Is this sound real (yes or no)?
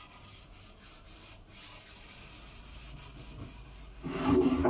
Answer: yes